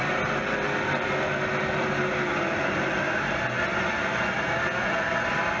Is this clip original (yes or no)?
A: yes